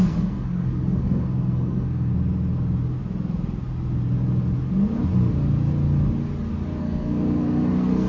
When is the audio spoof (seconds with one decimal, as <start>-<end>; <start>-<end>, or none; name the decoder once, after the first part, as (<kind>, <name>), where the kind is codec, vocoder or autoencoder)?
0.0-2.1 (codec, SNAC); 6.8-8.1